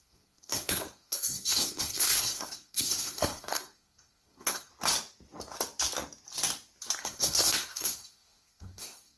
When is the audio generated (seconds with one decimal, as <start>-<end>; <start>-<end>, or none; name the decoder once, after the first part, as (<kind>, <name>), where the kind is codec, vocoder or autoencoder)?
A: 0.0-4.7 (codec, SNAC); 7.0-9.2

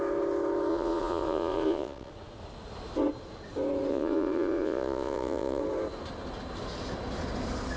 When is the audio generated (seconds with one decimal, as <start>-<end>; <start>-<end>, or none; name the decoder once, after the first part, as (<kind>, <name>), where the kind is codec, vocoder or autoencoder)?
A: 0.7-2.1 (vocoder, Vocos); 3.9-5.6